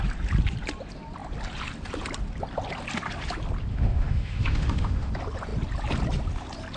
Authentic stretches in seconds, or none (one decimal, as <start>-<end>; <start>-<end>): 0.0-3.7; 5.1-6.8